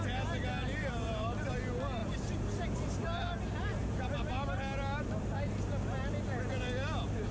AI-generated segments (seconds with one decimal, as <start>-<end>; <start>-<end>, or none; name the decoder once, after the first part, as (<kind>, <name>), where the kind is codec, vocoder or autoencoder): 0.8-1.5 (vocoder, BigVGAN v2); 3.7-4.3